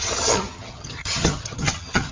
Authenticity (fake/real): fake